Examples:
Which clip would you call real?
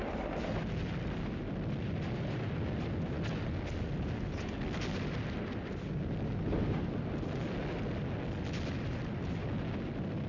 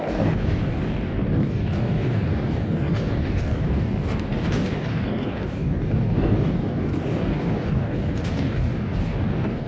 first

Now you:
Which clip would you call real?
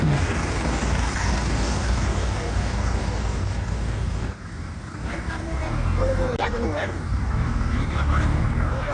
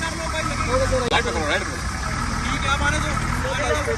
second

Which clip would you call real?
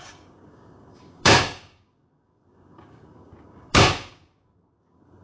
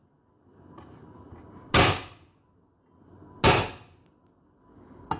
second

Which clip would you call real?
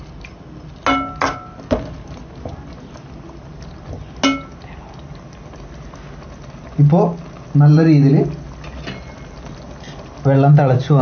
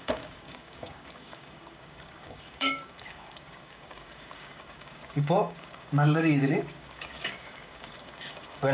first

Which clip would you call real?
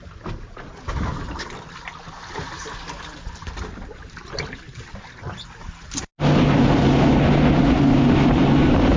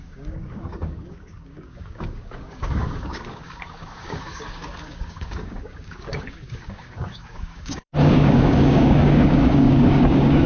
first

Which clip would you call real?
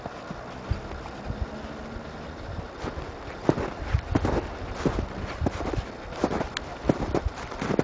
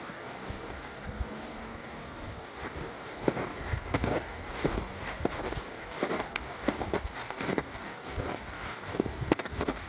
first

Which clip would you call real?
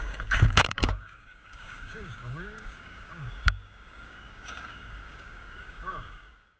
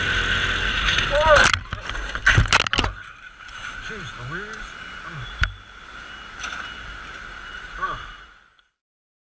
second